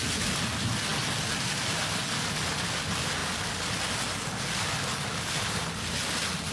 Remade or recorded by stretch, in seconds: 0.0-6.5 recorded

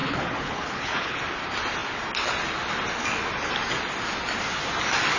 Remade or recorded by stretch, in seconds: 0.0-1.2 remade; 1.2-5.2 recorded

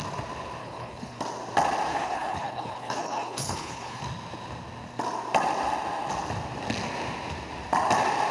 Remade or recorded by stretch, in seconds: 0.0-0.6 recorded; 0.6-1.2 remade; 1.2-1.9 recorded; 1.9-4.0 remade; 4.0-8.3 recorded

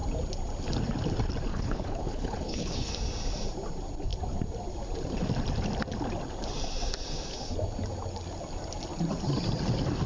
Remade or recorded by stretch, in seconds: 0.0-1.5 recorded; 1.5-2.9 remade; 2.9-10.1 recorded